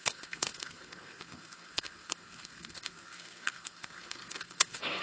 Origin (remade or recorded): remade